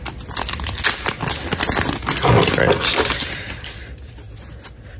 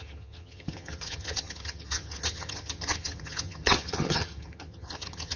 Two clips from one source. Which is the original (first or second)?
first